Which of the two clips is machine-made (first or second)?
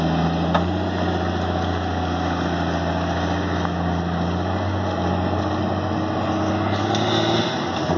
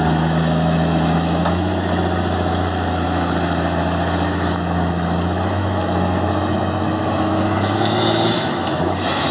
second